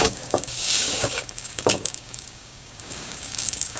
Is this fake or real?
fake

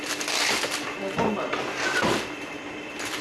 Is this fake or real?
real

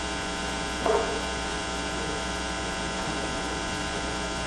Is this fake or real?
fake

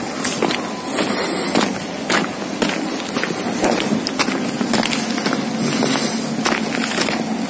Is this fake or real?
real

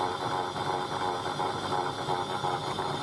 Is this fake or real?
real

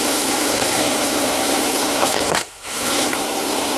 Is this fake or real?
fake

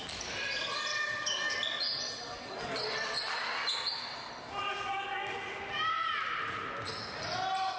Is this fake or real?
real